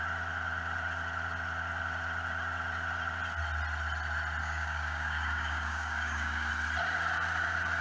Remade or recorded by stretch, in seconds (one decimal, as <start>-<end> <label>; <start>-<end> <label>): 0.0-4.4 recorded; 4.4-6.5 remade; 6.5-7.8 recorded